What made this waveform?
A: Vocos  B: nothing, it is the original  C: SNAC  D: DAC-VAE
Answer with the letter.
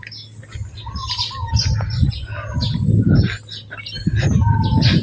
B